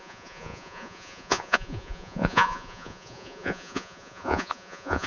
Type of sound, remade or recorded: remade